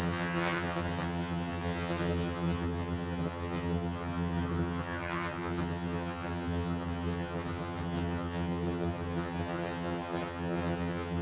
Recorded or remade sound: remade